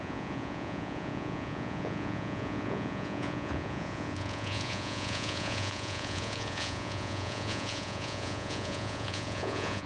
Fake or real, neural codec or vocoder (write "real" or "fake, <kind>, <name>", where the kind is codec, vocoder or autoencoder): fake, vocoder, Vocos